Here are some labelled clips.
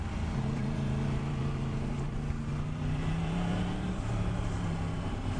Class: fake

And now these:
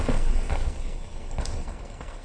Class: fake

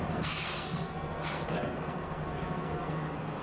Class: fake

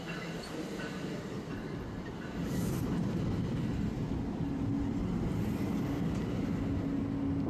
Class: real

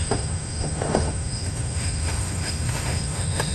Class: fake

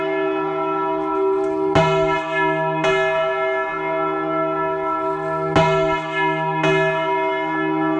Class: real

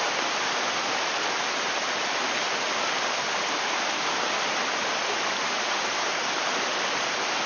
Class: real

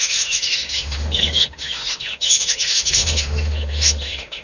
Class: fake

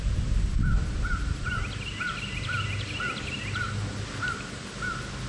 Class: real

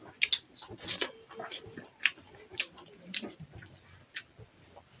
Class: real